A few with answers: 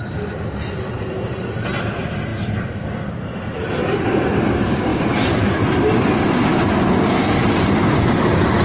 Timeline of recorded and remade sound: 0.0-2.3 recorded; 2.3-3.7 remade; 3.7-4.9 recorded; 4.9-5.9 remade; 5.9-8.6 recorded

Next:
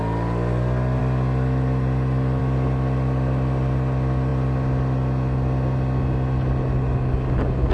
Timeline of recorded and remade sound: 0.0-7.7 recorded